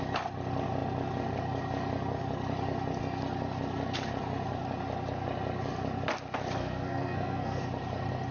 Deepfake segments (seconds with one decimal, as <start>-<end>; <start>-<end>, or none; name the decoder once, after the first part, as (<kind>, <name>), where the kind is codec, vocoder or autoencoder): 6.6-7.6 (codec, SNAC)